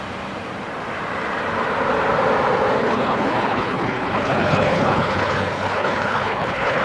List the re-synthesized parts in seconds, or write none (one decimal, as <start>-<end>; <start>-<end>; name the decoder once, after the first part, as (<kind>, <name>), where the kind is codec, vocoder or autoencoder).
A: 2.8-6.8 (codec, HILCodec)